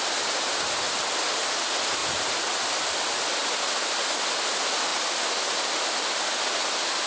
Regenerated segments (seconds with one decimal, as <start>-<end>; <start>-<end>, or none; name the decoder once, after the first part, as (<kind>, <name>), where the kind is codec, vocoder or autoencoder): none